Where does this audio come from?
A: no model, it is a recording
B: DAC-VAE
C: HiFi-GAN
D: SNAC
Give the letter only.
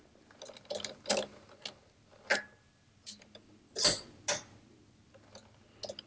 A